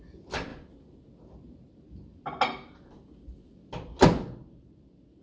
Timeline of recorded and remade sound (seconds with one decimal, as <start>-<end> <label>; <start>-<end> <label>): 0.0-5.2 recorded

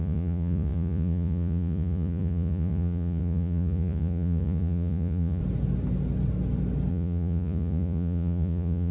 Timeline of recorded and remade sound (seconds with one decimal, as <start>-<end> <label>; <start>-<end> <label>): 0.0-5.4 remade; 5.4-6.9 recorded; 6.9-8.9 remade